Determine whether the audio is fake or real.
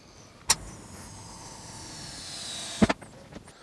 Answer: real